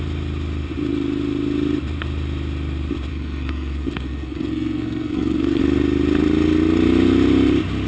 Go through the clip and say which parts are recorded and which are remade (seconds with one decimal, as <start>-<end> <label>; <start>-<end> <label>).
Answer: 0.0-3.1 recorded; 3.1-5.6 remade; 5.6-7.9 recorded